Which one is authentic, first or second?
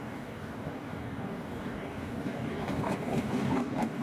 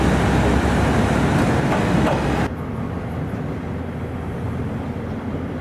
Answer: second